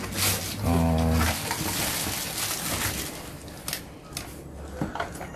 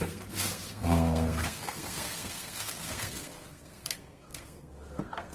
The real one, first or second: first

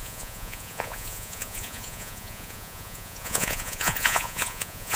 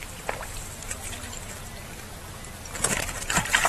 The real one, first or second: second